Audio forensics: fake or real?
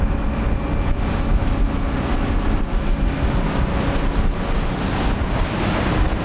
real